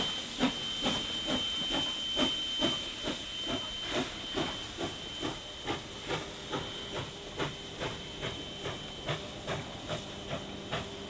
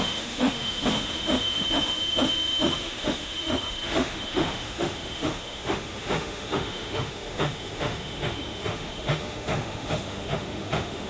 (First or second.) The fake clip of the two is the second